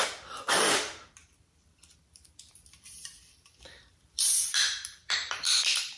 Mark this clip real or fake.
fake